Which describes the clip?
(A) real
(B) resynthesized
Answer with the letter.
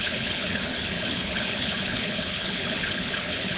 B